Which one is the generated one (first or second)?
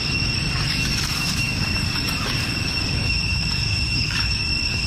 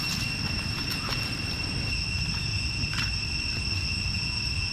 first